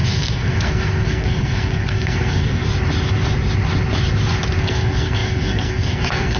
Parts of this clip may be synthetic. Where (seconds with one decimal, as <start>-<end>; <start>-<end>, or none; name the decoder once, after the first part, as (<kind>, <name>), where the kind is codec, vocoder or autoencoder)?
0.0-2.6 (codec, SNAC); 4.6-6.4